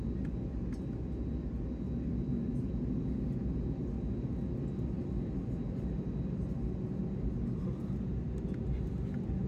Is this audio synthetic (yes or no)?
no